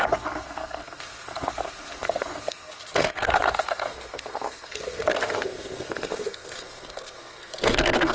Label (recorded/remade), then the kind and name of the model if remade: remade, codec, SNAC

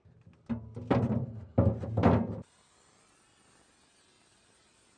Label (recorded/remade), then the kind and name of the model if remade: recorded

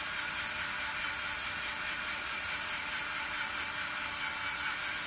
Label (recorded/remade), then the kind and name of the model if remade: recorded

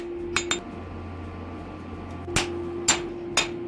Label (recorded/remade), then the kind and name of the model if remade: recorded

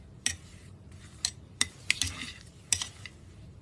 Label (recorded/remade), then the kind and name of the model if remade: remade, vocoder, BigVGAN v2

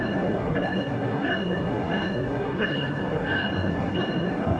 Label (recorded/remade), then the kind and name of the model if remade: remade, codec, SNAC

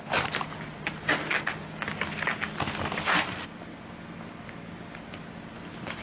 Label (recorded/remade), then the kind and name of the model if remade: recorded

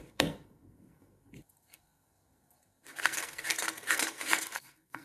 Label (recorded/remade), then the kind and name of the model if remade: remade, codec, SNAC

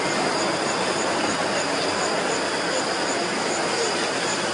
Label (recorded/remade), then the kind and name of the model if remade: recorded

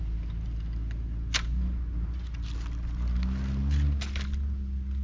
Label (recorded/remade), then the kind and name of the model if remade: recorded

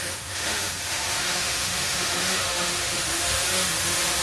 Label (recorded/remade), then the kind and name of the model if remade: remade, autoencoder, DAC-VAE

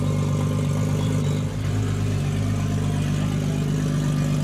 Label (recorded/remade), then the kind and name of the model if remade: recorded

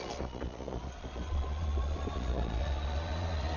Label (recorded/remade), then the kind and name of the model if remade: remade, vocoder, Vocos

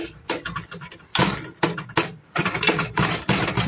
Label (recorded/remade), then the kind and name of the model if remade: recorded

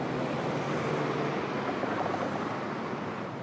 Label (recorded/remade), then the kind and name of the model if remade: recorded